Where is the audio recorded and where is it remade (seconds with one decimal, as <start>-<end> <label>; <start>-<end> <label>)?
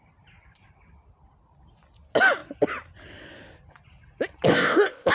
0.0-4.5 recorded; 4.5-5.1 remade